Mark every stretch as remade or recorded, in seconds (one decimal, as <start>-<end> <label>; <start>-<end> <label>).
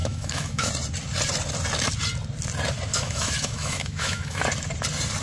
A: 0.0-0.7 remade; 0.7-2.9 recorded; 2.9-4.4 remade; 4.4-5.2 recorded